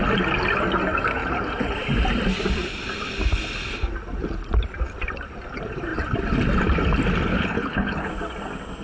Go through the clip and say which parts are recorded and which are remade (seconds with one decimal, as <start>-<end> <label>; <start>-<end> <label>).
0.0-7.3 recorded; 7.3-8.1 remade; 8.1-8.8 recorded